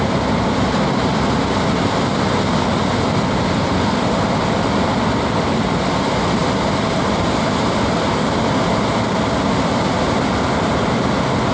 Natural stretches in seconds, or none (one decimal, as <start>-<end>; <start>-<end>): 0.0-11.5